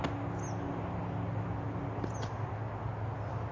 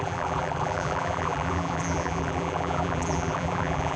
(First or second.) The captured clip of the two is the first